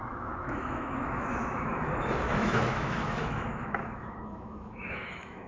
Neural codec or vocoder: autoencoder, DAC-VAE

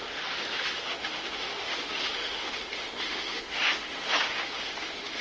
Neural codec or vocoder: autoencoder, DAC-VAE